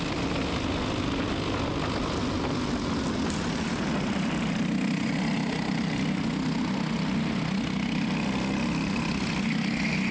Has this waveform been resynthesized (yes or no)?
no